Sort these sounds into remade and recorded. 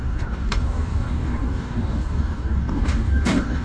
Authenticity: remade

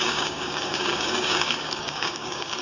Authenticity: remade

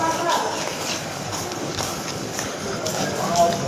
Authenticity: remade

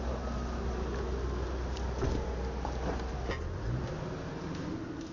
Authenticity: recorded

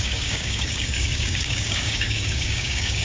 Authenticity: remade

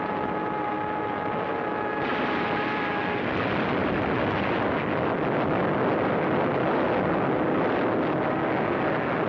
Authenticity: recorded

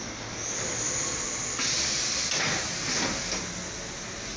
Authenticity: recorded